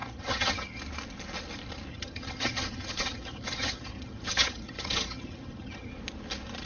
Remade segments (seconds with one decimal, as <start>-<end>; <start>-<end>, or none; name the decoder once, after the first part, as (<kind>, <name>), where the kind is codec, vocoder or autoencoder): 0.0-0.8 (vocoder, HiFi-GAN); 1.9-5.9

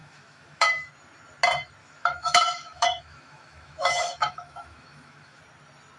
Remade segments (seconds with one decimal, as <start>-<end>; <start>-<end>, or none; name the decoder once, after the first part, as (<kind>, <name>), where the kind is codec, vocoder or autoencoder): 0.0-0.9 (autoencoder, DAC-VAE); 1.8-5.4

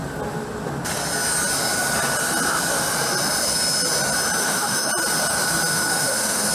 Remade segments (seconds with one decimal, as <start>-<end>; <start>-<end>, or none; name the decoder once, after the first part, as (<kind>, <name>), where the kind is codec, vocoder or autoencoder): 4.4-4.9 (autoencoder, DAC-VAE); 5.7-6.5